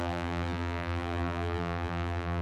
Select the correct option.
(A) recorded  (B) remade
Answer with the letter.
B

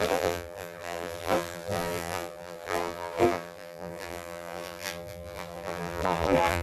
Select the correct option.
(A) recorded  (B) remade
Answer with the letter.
B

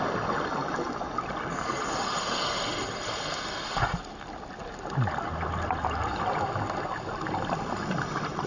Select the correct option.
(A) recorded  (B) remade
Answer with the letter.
A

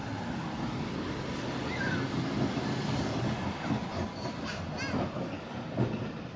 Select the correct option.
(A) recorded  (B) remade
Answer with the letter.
A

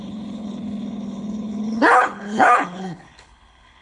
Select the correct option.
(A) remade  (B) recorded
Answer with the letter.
A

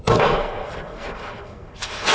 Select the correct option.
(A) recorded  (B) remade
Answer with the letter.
B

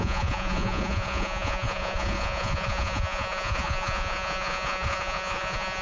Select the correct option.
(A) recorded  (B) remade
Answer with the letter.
B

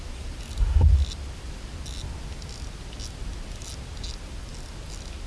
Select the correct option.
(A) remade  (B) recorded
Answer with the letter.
B